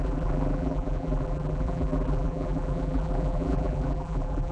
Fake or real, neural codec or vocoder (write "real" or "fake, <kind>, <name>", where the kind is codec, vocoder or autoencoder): fake, vocoder, BigVGAN v2